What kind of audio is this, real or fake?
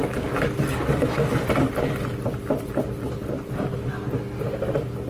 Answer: real